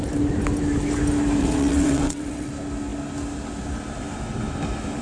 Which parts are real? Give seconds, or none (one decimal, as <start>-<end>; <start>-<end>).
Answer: 0.0-1.4; 2.5-5.0

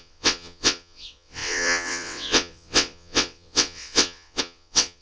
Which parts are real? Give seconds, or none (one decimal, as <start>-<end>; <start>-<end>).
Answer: none

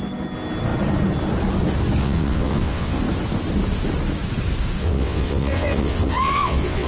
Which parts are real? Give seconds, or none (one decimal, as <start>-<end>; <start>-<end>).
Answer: 0.0-2.0; 3.0-4.8

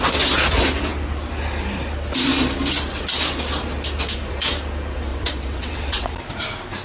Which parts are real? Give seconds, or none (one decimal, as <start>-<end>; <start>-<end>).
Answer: 0.0-5.1; 6.1-6.8